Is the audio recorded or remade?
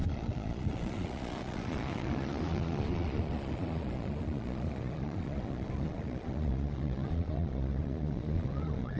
remade